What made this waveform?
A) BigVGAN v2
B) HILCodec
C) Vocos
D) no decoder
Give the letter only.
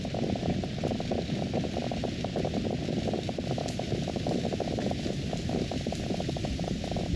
D